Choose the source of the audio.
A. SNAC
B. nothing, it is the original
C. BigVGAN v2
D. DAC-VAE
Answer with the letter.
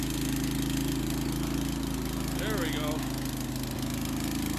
B